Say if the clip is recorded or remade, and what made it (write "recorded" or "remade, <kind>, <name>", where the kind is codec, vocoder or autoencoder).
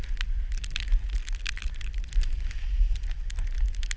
recorded